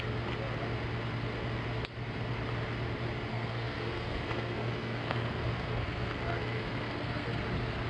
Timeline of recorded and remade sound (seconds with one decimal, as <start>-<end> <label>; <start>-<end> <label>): 0.0-3.3 recorded; 3.3-7.4 remade; 7.4-7.9 recorded